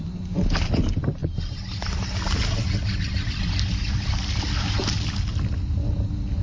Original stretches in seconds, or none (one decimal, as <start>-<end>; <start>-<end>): 0.0-6.4